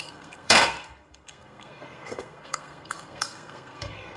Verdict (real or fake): fake